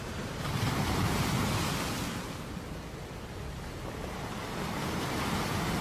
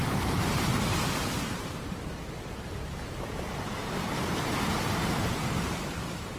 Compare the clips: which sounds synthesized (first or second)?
second